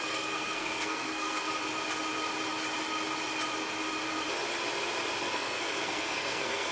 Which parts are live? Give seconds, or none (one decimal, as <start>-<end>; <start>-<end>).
1.5-5.2